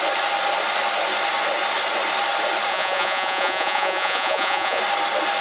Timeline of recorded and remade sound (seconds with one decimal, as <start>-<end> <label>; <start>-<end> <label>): 0.0-2.7 recorded; 2.7-4.8 remade; 4.8-5.4 recorded

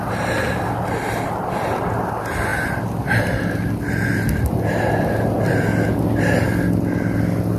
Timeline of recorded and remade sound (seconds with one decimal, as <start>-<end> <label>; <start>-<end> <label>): 0.0-7.6 recorded

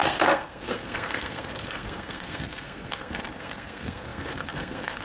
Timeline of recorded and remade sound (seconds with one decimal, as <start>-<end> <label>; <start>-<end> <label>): 0.0-5.0 remade

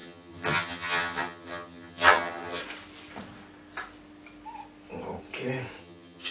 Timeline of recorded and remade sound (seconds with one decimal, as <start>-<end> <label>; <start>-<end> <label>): 0.0-2.6 remade; 2.6-5.8 recorded; 5.8-6.3 remade

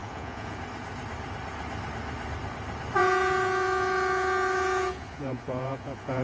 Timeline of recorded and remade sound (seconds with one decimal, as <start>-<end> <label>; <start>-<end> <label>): 0.0-0.6 remade; 0.6-3.0 recorded; 3.0-6.2 remade

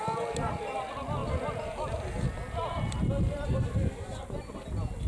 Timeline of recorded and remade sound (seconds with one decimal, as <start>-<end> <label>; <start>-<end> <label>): 0.0-1.2 recorded; 1.2-3.1 remade; 3.1-5.1 recorded